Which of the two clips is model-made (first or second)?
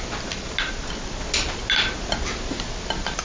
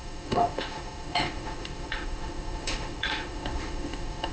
second